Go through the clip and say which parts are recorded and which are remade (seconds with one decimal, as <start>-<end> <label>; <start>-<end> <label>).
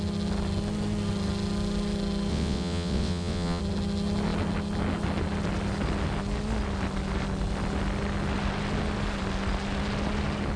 0.0-2.3 recorded; 2.3-3.6 remade; 3.6-10.6 recorded